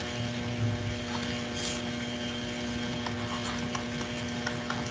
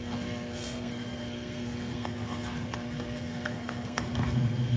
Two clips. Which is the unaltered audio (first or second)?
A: first